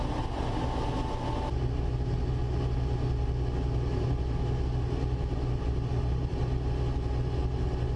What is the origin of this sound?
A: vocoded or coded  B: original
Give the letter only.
B